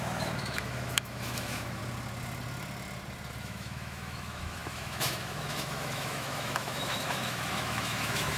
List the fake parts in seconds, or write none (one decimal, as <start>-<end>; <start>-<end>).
0.0-1.8; 3.4-8.4